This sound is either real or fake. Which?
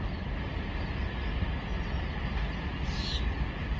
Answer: real